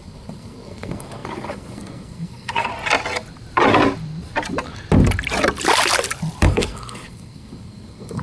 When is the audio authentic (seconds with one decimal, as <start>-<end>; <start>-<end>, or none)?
2.7-6.4